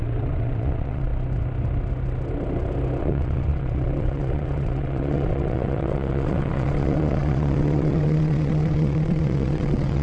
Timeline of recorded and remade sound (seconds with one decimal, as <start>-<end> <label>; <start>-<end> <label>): 0.0-1.1 remade; 1.1-3.0 recorded; 3.0-10.0 remade